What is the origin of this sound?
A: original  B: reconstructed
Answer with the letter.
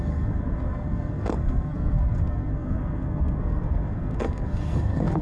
B